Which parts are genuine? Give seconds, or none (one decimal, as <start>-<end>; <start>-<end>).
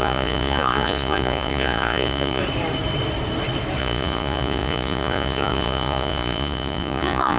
2.4-3.8